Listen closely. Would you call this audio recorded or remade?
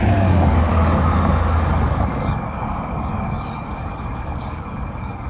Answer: remade